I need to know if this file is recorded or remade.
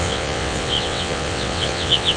remade